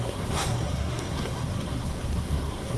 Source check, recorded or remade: remade